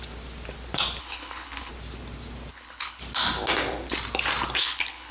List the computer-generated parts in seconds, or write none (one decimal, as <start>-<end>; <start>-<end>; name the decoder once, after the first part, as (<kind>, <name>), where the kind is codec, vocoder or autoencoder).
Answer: 1.0-1.7 (codec, HILCodec); 2.5-3.0; 4.6-5.1